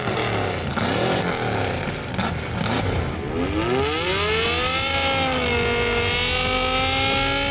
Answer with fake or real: real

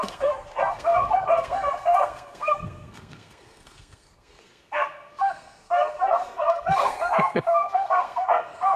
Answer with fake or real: fake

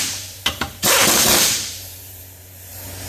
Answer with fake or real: fake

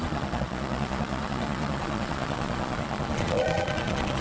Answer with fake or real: fake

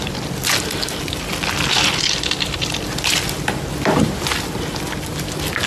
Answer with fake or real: real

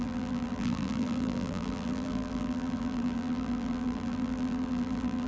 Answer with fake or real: fake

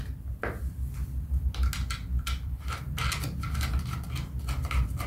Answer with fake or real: real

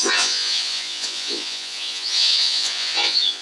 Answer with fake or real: fake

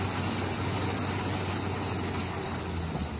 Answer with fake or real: real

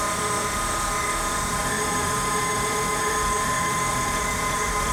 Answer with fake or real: fake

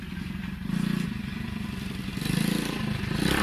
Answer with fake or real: real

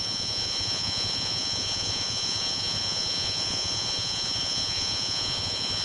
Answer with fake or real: fake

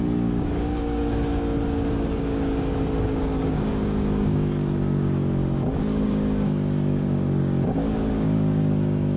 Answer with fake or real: fake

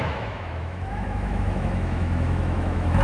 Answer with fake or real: fake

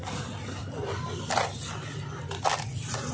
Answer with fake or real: real